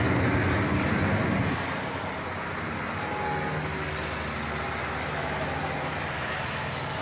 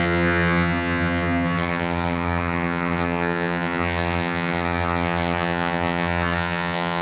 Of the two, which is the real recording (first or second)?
first